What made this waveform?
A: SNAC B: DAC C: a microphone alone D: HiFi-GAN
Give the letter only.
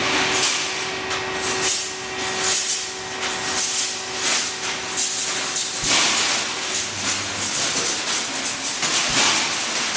C